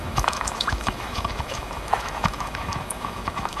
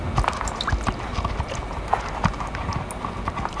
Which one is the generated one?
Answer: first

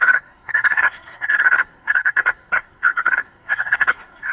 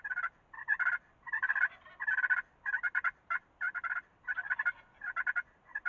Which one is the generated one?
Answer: first